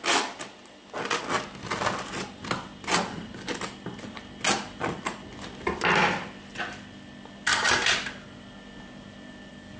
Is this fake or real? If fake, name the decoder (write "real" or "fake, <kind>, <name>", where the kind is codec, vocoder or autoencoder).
real